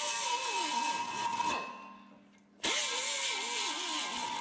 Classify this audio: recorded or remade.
recorded